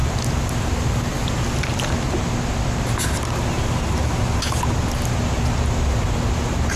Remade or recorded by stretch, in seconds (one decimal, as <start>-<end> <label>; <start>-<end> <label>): 0.0-6.8 recorded